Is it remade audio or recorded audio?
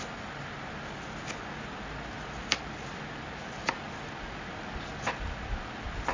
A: recorded